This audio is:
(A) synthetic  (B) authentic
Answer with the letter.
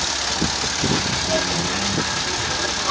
B